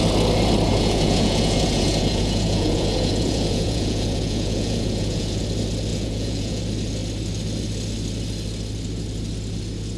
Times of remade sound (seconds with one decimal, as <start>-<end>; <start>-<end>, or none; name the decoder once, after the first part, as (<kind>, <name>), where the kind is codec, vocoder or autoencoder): 0.7-5.4 (vocoder, Vocos); 5.9-6.6